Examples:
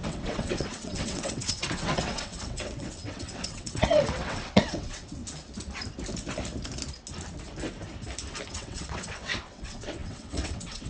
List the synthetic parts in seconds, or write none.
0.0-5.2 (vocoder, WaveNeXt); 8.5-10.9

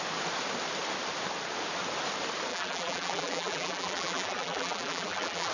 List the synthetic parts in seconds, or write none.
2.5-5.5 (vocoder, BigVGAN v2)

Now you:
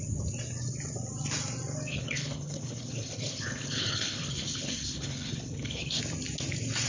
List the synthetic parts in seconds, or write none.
1.9-6.0 (codec, HILCodec)